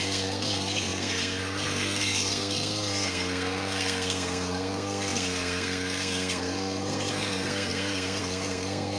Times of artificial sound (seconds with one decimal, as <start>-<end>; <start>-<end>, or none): 0.0-9.0